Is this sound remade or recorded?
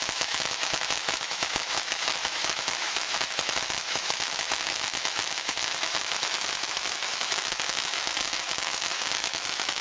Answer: remade